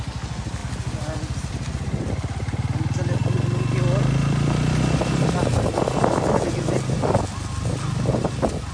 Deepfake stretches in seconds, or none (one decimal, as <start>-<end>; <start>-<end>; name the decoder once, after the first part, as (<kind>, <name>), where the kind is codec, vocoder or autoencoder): none